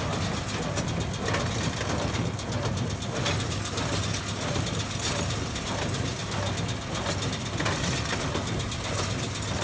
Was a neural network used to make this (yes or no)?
no